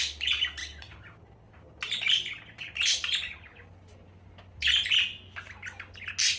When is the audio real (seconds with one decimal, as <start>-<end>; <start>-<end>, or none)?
0.0-6.4